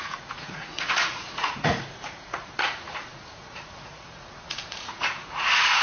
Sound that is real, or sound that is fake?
fake